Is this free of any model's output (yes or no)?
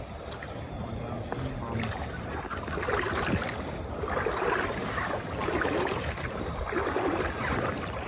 yes